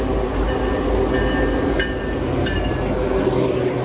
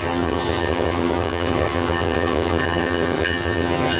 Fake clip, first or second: second